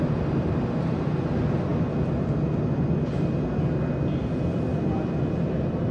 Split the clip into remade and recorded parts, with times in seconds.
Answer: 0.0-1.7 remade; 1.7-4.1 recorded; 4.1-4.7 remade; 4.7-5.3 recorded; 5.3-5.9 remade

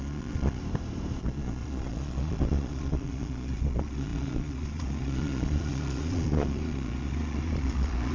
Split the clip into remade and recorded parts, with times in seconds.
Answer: 0.0-0.6 remade; 0.6-1.2 recorded; 1.2-8.1 remade

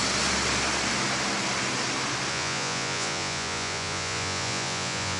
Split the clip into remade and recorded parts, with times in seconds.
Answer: 0.0-2.3 recorded; 2.3-5.2 remade